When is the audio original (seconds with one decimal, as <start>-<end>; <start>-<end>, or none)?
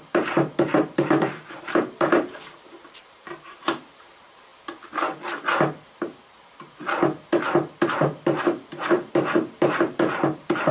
4.5-8.4